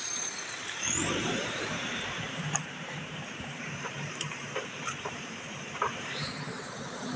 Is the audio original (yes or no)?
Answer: no